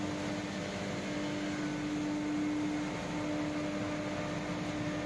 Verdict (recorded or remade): recorded